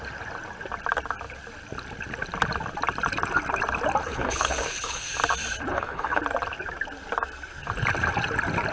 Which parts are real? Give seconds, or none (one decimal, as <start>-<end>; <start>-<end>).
0.0-4.0; 5.1-5.7; 6.2-8.7

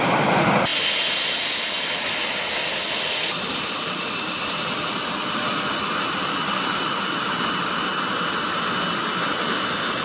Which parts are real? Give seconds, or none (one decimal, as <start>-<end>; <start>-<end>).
0.0-10.0